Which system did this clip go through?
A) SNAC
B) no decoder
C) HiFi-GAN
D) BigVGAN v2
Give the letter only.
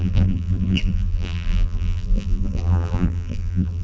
D